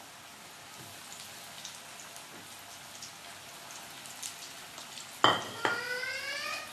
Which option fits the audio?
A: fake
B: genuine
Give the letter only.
B